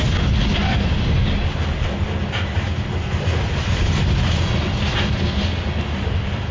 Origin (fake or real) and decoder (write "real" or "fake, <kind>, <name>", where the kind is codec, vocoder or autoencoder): real